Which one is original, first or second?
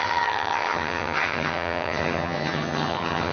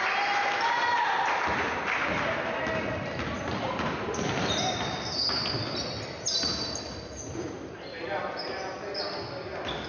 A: second